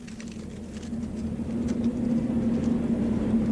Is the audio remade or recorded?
recorded